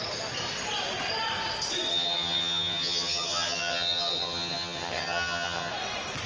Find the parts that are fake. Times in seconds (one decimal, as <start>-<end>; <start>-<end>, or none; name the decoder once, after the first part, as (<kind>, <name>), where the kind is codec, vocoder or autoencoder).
1.9-5.7 (vocoder, HiFi-GAN)